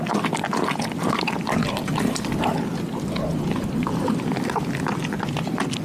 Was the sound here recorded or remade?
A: recorded